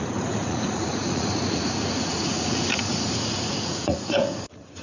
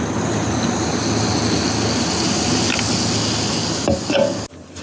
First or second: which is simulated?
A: first